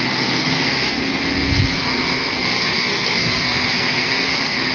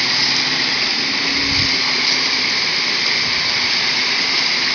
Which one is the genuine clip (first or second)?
second